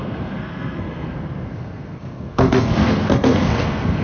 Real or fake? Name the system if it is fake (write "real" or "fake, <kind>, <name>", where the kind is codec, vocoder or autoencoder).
fake, codec, SNAC